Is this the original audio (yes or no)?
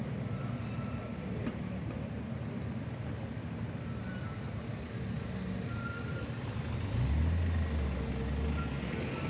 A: yes